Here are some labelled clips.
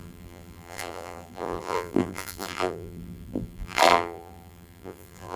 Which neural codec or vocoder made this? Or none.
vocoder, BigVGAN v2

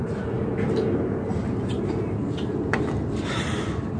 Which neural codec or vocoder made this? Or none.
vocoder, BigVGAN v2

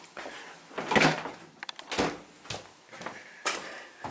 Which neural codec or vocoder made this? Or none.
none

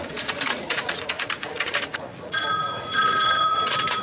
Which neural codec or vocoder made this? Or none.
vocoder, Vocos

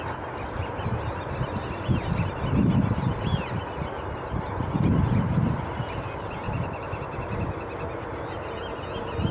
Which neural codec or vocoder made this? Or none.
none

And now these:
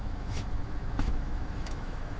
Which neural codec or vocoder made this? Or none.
autoencoder, DAC-VAE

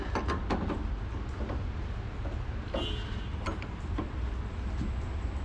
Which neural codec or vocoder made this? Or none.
none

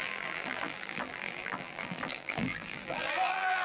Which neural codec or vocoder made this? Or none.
vocoder, BigVGAN v2